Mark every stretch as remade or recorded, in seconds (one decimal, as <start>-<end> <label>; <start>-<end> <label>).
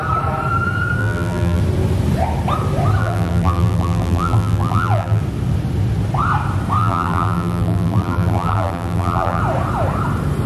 0.0-1.0 recorded; 1.0-1.6 remade; 1.6-3.0 recorded; 3.0-5.2 remade; 5.2-6.8 recorded; 6.8-9.4 remade; 9.4-10.5 recorded